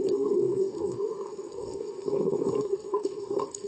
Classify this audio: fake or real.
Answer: fake